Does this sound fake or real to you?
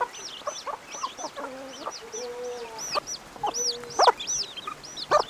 real